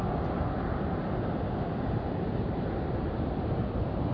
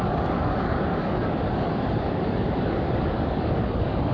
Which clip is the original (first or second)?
first